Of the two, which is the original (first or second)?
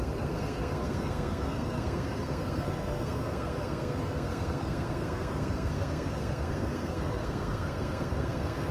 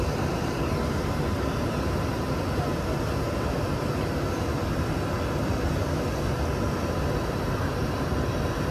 second